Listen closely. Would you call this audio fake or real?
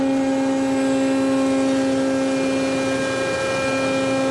real